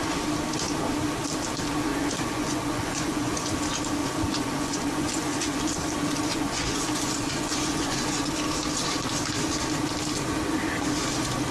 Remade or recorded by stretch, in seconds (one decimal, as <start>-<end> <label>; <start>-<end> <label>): 0.0-1.9 recorded; 1.9-3.5 remade; 3.5-4.0 recorded; 4.0-5.6 remade; 5.6-6.3 recorded; 6.3-8.3 remade; 8.3-11.5 recorded